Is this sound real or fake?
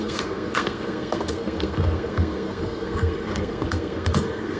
fake